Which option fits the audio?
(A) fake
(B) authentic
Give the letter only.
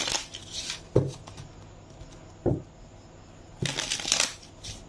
B